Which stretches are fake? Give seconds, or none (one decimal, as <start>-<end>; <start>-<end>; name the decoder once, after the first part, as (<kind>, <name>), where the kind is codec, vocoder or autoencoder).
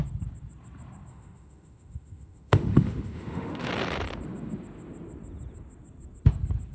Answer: 1.1-3.7 (autoencoder, DAC-VAE)